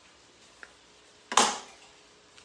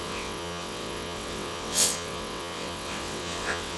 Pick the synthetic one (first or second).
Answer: second